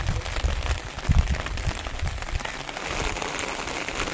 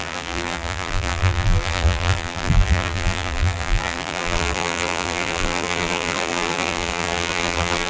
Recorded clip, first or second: first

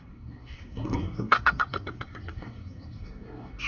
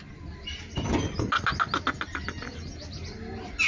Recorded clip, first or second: second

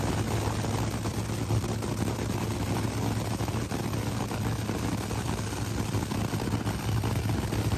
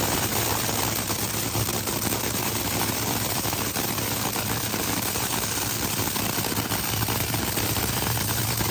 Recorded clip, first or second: first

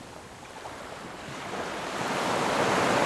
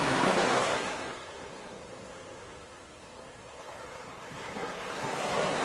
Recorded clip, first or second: first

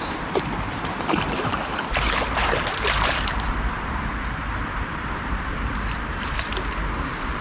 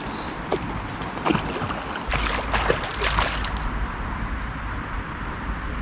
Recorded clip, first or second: second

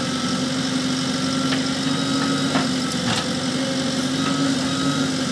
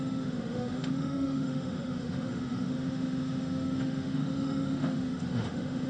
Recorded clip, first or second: first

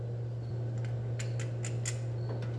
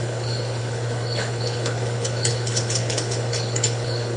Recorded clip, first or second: first